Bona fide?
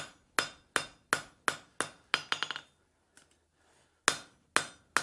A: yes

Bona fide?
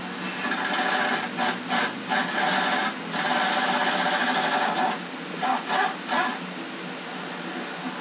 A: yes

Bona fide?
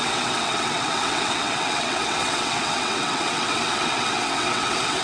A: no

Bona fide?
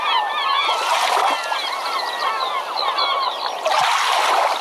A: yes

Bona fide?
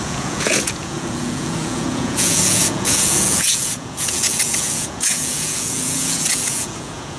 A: no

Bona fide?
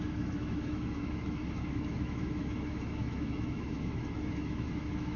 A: no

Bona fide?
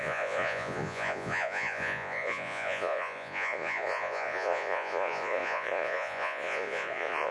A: no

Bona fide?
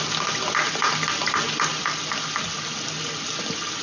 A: yes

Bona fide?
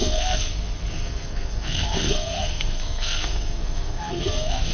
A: no